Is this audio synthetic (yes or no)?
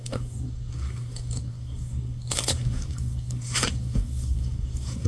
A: yes